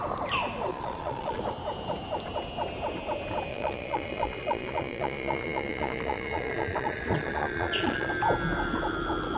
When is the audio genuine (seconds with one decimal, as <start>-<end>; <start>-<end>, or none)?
0.0-0.7; 1.4-3.5; 8.1-9.4